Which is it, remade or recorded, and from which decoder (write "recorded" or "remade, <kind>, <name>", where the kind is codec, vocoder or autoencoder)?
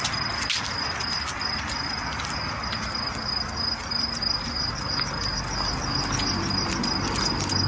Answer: recorded